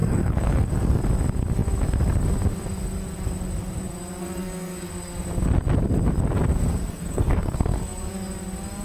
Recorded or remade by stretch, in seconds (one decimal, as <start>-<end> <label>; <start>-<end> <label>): 0.0-1.0 remade; 1.0-4.2 recorded; 4.2-4.9 remade; 4.9-6.7 recorded; 6.7-8.1 remade; 8.1-8.8 recorded